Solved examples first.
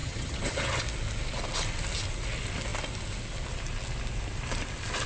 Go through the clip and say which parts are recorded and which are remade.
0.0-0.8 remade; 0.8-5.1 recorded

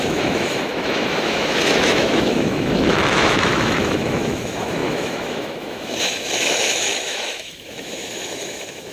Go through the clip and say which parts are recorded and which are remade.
0.0-8.9 remade

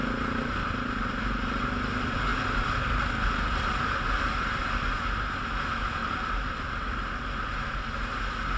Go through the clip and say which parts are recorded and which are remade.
0.0-6.0 recorded; 6.0-6.9 remade; 6.9-8.6 recorded

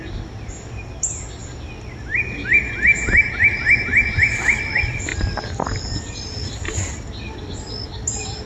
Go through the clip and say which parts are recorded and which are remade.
0.0-8.5 recorded

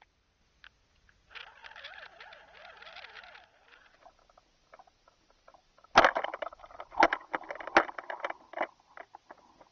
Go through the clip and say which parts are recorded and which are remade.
0.0-9.7 recorded